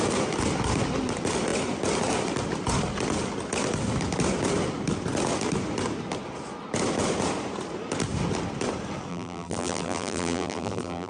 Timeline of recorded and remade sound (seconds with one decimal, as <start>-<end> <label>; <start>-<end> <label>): 0.0-9.1 recorded; 9.1-11.1 remade